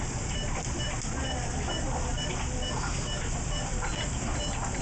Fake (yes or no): no